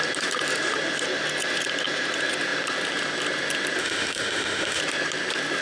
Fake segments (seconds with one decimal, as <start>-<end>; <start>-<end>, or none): 3.8-4.8